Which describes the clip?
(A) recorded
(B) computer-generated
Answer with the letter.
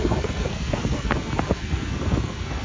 B